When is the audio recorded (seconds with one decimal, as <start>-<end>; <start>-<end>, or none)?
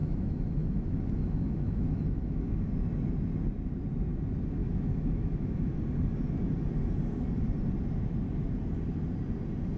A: 2.7-4.6; 5.8-9.8